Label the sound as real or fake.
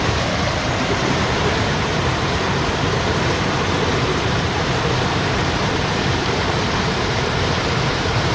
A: fake